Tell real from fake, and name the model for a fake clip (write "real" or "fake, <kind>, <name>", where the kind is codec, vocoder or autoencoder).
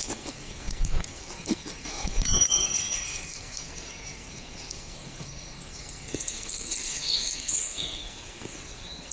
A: fake, codec, SNAC